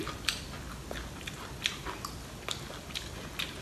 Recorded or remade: recorded